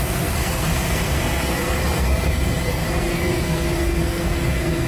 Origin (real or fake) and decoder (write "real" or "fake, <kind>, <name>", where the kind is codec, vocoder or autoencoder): fake, codec, SNAC